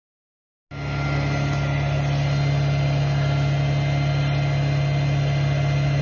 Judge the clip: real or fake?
real